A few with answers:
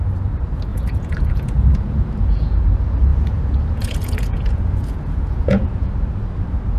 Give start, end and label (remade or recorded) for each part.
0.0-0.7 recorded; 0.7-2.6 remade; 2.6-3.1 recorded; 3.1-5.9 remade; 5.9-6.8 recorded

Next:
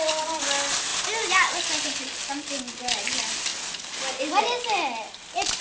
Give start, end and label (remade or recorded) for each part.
0.0-5.6 recorded

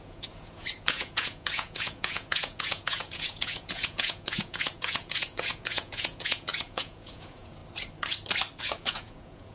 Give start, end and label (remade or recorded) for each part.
0.0-7.6 remade; 7.6-8.6 recorded; 8.6-9.5 remade

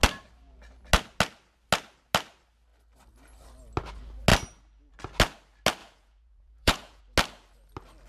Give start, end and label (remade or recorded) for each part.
0.0-5.8 recorded; 5.8-7.0 remade; 7.0-8.1 recorded